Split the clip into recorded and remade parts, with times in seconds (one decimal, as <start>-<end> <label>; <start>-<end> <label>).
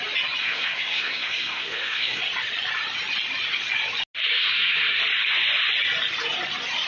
0.0-0.4 recorded; 0.4-2.2 remade; 2.2-4.3 recorded; 4.3-5.0 remade; 5.0-6.9 recorded